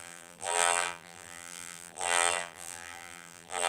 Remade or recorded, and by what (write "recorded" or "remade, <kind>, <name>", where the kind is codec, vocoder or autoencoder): remade, vocoder, BigVGAN v2